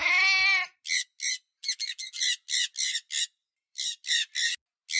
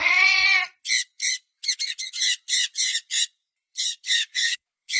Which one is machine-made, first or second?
second